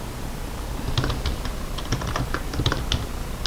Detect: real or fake real